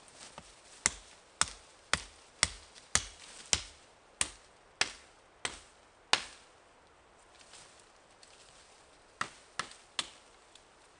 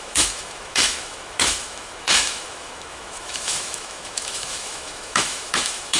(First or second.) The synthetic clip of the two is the second